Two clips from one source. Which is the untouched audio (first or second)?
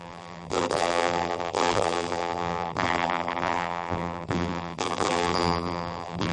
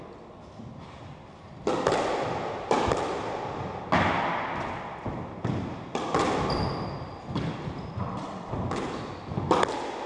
second